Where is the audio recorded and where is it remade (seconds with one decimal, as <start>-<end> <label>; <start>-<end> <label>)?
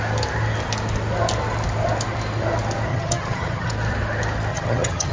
0.0-2.9 recorded; 2.9-3.7 remade; 3.7-4.5 recorded; 4.5-5.1 remade